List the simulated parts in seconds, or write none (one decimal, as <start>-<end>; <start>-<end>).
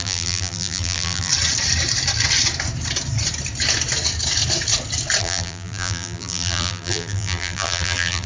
0.0-1.3; 5.2-8.3